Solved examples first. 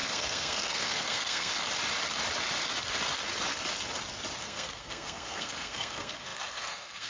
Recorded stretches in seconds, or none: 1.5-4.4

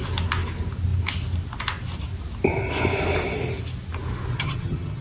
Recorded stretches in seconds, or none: 0.0-4.3

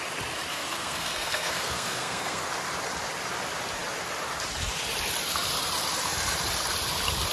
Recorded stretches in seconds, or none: 0.0-0.5; 2.5-7.3

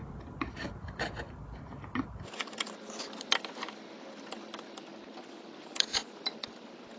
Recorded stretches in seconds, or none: 0.0-7.0

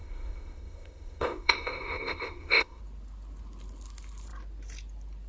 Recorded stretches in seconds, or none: 2.8-5.3

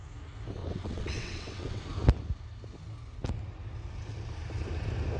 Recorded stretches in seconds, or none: 0.0-0.6; 1.8-5.2

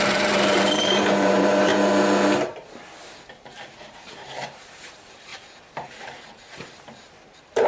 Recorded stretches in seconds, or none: 1.7-3.9; 5.3-5.9